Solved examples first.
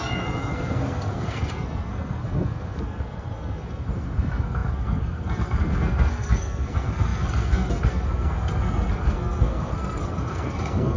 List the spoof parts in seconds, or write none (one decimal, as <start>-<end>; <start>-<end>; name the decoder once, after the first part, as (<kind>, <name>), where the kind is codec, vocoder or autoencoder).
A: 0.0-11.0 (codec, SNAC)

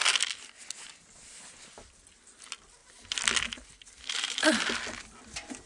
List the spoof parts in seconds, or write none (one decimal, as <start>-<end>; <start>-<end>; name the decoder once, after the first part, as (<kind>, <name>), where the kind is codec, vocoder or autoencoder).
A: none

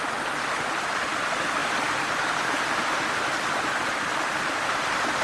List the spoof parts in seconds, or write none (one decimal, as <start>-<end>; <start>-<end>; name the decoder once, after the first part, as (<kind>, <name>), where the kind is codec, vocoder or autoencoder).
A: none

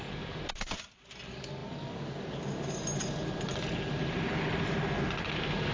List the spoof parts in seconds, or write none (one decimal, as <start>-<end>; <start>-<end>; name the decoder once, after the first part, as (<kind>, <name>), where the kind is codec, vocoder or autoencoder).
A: none

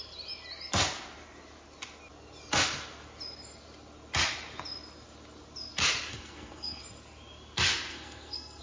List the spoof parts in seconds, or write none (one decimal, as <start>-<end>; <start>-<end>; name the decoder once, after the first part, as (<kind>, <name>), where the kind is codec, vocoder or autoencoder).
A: 6.1-6.8 (codec, SNAC); 7.9-8.6

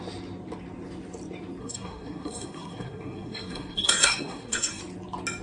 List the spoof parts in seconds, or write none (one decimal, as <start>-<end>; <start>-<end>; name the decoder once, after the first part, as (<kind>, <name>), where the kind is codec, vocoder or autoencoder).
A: 1.6-4.8 (codec, SNAC)

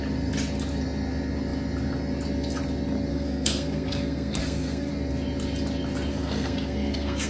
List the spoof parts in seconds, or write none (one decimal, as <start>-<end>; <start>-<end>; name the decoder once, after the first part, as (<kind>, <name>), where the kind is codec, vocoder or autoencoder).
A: 3.1-4.9 (codec, SNAC); 6.1-7.3

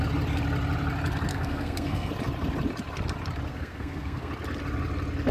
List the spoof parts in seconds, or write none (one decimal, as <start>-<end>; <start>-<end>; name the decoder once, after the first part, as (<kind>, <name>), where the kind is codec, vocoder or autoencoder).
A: 1.3-2.1 (codec, SNAC); 3.5-4.3